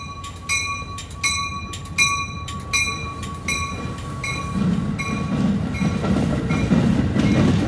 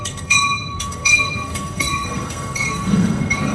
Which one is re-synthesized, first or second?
second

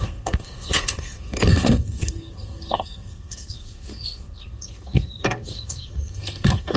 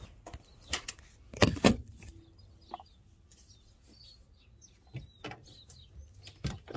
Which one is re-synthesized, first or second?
first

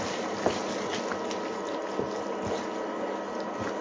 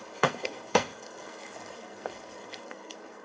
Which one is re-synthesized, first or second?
second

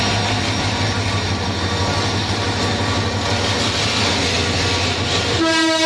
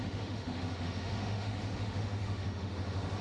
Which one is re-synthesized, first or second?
second